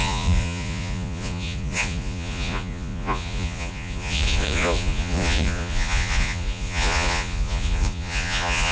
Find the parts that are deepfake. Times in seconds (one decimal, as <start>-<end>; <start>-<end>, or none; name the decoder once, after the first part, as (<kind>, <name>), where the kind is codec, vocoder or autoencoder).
0.0-8.7 (vocoder, Vocos)